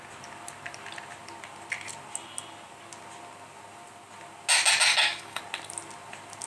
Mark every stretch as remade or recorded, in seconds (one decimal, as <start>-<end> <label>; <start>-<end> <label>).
0.0-4.9 recorded; 4.9-5.4 remade; 5.4-6.5 recorded